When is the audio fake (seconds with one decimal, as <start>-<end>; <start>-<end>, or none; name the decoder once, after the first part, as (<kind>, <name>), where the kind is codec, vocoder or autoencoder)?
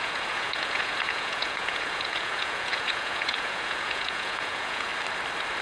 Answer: 0.0-4.9 (vocoder, Vocos)